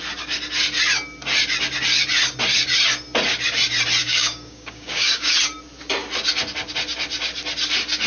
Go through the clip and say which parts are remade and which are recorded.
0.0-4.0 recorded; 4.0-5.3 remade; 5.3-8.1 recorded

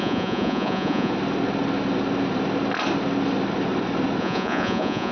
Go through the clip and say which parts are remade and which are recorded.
0.0-1.1 remade; 1.1-4.2 recorded; 4.2-5.1 remade

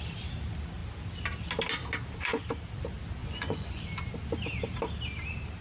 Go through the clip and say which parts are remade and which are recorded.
0.0-3.2 recorded; 3.2-3.8 remade; 3.8-5.6 recorded